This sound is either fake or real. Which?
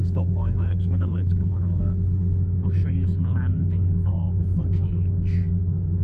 fake